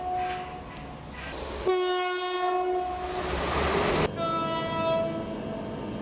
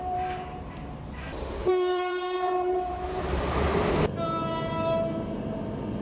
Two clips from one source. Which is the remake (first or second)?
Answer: second